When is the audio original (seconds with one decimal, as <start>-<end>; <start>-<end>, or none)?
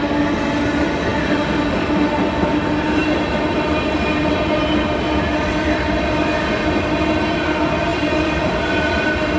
0.0-7.9; 8.8-9.4